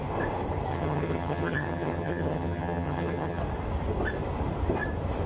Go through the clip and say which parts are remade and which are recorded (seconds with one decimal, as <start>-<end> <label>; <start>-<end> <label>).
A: 0.0-0.7 recorded; 0.7-3.4 remade; 3.4-5.3 recorded